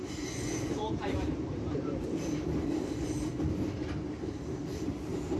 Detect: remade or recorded remade